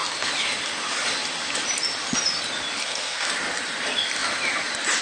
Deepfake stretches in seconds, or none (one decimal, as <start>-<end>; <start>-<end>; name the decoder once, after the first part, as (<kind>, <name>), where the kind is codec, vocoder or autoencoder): 2.8-3.3 (codec, SNAC)

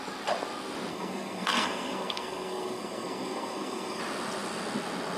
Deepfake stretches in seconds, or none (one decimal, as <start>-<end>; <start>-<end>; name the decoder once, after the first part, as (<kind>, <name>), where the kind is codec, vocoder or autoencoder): 0.9-4.0 (codec, SNAC)

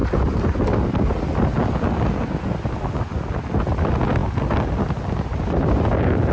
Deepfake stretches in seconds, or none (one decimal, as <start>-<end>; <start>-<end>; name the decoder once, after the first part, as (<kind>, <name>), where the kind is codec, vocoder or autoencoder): none

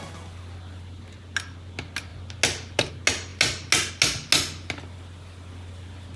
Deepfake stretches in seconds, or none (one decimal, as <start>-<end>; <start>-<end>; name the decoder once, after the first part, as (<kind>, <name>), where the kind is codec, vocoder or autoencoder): none

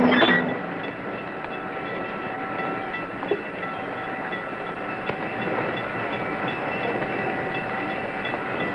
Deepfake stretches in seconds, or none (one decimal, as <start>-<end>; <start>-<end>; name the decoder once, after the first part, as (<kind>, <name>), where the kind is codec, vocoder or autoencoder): none